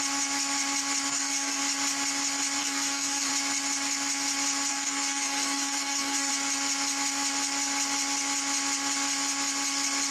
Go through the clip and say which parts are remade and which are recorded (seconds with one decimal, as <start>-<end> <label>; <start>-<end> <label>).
0.0-1.1 recorded; 1.1-1.6 remade; 1.6-2.6 recorded; 2.6-3.3 remade; 3.3-4.7 recorded; 4.7-6.3 remade; 6.3-10.1 recorded